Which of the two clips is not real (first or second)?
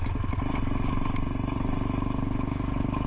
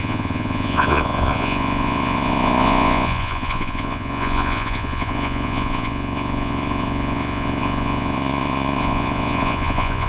second